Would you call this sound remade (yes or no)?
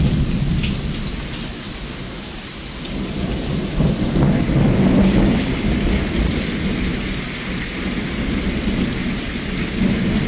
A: no